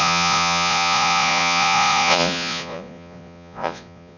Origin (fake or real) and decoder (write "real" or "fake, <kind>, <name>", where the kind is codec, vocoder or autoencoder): fake, vocoder, Vocos